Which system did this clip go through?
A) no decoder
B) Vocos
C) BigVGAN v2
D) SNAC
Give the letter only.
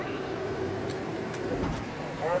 C